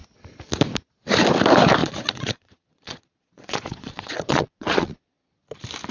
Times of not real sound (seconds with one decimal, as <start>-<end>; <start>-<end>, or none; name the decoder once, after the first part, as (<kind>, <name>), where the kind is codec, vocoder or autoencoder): 1.8-5.3 (vocoder, Vocos)